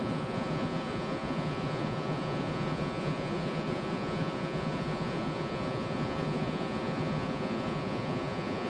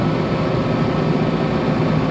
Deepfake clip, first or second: first